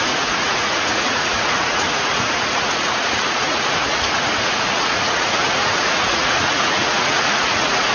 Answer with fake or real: fake